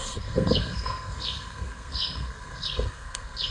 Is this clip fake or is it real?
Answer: fake